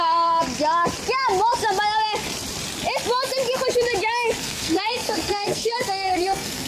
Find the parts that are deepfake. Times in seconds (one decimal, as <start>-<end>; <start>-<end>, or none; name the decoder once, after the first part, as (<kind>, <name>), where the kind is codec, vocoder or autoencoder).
0.0-0.4 (codec, SNAC); 4.4-6.7